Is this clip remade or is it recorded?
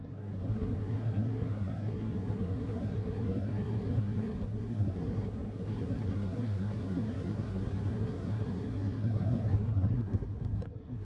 remade